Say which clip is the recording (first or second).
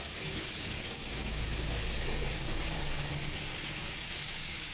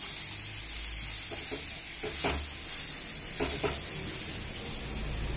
second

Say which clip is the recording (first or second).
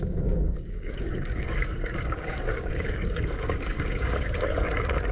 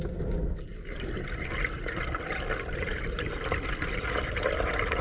second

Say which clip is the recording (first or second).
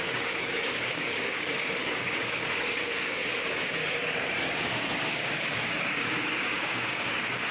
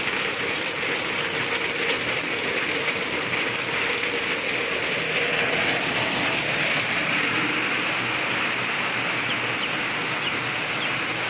second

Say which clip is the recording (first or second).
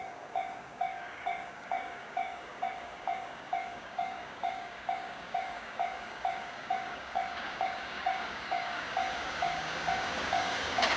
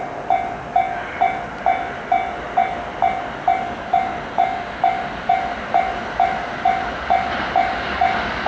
second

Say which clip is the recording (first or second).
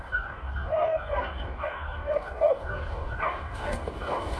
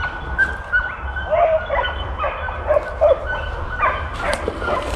second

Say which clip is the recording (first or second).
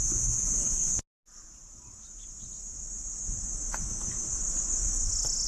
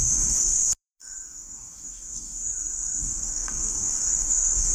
first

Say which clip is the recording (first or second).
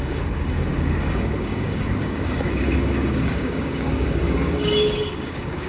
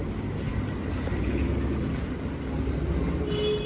second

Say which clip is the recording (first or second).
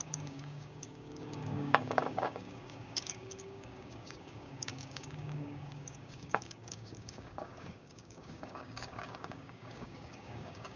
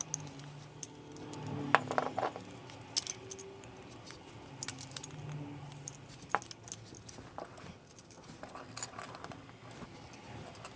second